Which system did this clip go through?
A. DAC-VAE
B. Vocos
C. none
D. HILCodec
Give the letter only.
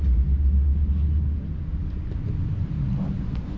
C